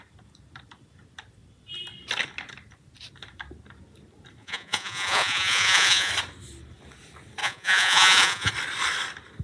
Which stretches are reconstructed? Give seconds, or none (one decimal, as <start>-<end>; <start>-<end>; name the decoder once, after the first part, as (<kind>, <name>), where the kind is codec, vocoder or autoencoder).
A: 4.4-6.1 (vocoder, Vocos); 7.4-8.5